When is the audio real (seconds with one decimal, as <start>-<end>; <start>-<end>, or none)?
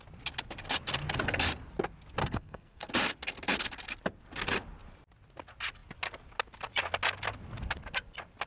0.0-2.2; 2.9-8.5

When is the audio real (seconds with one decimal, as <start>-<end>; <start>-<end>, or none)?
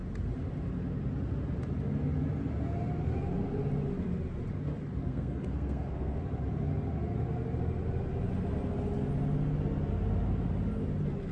0.0-5.1; 6.2-11.3